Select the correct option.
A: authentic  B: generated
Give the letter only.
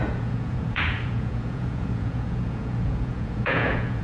B